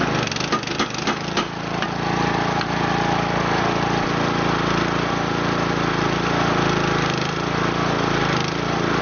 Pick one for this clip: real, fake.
real